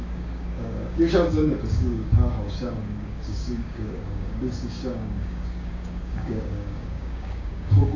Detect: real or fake fake